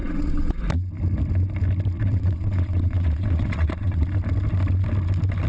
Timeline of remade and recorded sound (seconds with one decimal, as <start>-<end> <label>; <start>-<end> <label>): 0.0-0.6 remade; 0.6-2.0 recorded; 2.0-4.1 remade; 4.1-5.5 recorded